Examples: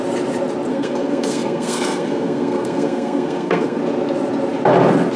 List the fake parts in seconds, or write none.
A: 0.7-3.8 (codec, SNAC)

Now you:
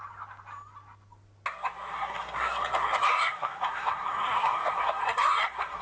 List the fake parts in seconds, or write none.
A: 1.9-5.8 (codec, SNAC)

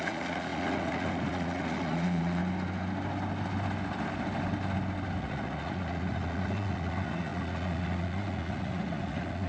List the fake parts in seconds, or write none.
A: 0.0-2.4 (vocoder, Vocos); 5.2-9.5

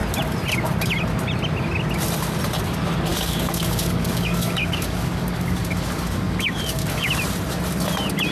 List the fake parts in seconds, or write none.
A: 3.1-7.1 (codec, DAC)

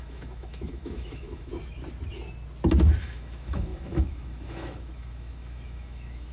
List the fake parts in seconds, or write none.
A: 0.0-1.5 (autoencoder, DAC-VAE); 3.0-6.3

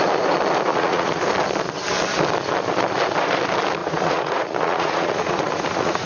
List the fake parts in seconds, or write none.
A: 0.7-1.2 (vocoder, Vocos); 3.8-6.1

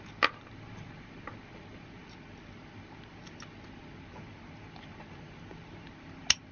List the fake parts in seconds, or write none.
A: none